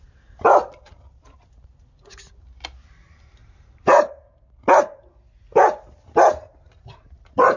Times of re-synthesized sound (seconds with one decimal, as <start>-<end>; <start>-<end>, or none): 3.4-4.1